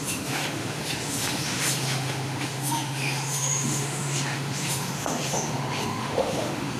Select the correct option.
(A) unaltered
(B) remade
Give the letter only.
B